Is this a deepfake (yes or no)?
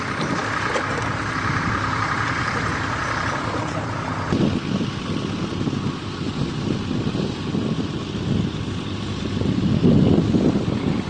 no